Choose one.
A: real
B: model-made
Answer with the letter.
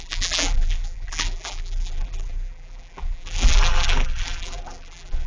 B